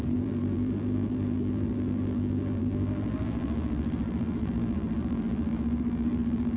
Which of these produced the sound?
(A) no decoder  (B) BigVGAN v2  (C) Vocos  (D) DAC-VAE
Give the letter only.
B